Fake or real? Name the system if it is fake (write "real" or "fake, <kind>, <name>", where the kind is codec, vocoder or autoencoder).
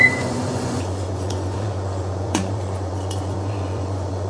fake, vocoder, Vocos